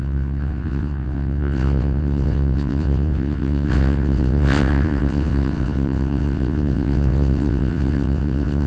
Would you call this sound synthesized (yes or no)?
yes